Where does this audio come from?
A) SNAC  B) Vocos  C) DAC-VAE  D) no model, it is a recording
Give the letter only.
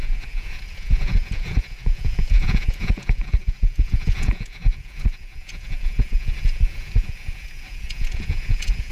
B